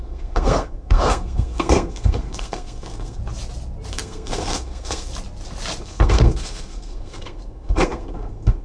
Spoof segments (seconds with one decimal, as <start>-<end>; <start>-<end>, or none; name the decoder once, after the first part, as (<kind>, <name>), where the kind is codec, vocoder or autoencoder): 0.0-3.2 (codec, SNAC); 3.9-5.1; 5.8-8.6